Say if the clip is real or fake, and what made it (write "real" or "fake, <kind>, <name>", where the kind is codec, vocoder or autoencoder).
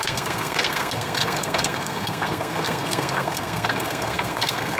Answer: fake, codec, SNAC